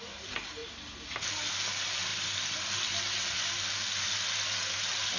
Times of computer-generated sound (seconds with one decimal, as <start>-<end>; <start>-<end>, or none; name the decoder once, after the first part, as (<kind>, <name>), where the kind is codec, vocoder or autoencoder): none